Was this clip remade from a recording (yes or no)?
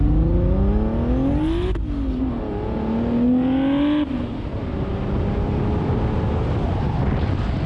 no